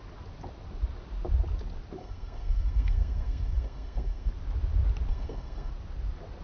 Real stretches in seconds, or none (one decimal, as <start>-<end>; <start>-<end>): 0.0-2.0; 4.3-5.1; 5.7-6.4